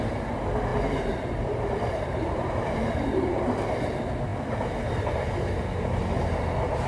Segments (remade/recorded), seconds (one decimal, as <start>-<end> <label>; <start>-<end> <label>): 0.0-0.7 recorded; 0.7-3.4 remade; 3.4-6.9 recorded